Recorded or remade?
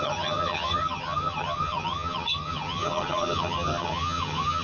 remade